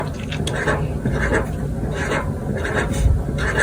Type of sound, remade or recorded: recorded